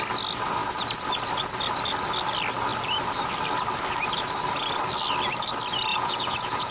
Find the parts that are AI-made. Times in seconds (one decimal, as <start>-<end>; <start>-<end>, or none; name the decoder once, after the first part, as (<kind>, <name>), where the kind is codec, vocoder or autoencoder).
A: 5.9-6.7 (vocoder, Vocos)